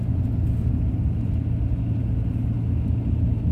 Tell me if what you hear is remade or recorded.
recorded